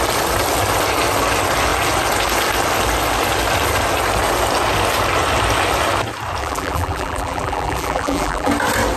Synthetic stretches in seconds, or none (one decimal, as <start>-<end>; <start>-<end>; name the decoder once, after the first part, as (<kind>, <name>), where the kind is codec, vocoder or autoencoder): 6.4-8.5 (vocoder, BigVGAN v2)